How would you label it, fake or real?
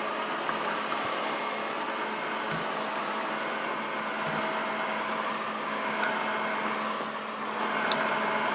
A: real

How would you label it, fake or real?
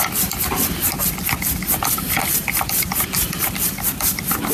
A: real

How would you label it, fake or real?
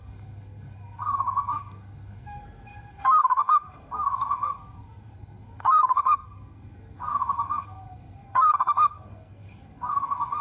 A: fake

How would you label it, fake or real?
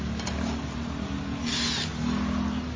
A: real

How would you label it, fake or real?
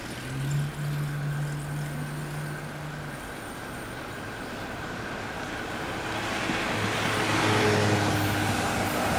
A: real